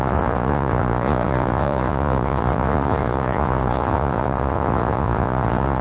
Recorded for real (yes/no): no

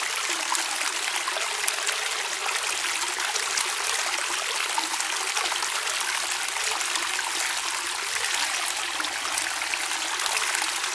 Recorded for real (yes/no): yes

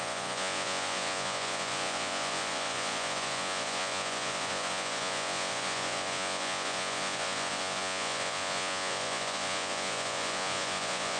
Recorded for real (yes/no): no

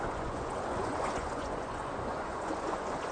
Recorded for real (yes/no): no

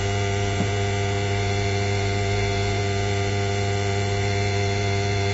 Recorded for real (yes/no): no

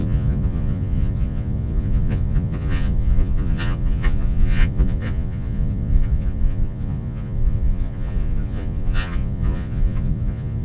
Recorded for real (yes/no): no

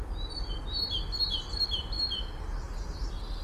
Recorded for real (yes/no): yes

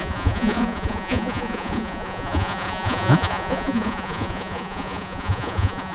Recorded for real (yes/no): no